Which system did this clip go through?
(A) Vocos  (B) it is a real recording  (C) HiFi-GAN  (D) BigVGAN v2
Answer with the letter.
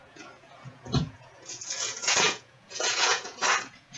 A